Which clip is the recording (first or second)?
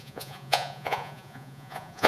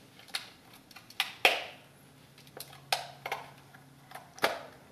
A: second